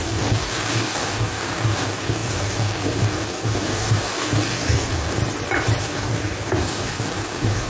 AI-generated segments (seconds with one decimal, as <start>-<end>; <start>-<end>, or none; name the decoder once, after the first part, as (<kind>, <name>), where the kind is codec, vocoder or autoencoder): 0.0-5.2 (codec, DAC); 5.8-7.7